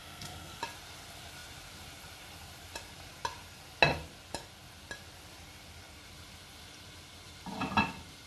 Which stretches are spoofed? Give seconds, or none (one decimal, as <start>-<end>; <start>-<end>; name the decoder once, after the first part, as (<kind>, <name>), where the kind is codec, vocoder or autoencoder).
0.0-0.6 (codec, SNAC)